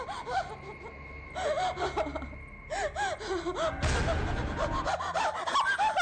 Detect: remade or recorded recorded